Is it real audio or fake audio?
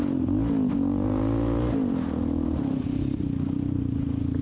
real